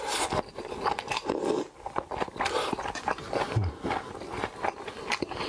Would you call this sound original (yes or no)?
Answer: yes